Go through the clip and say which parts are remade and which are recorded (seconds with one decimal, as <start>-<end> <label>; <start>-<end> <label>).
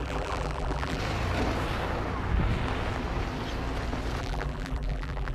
0.0-1.0 remade; 1.0-4.2 recorded; 4.2-5.3 remade